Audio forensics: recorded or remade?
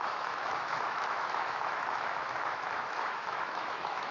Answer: remade